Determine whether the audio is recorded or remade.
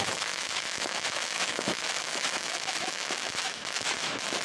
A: remade